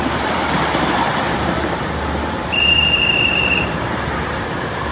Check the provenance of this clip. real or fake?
fake